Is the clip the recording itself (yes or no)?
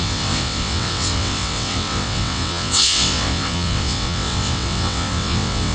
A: no